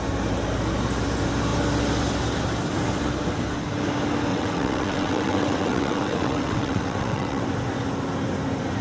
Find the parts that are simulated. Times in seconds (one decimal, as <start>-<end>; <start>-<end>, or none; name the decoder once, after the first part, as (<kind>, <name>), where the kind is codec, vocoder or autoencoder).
4.3-7.4 (vocoder, WaveNeXt)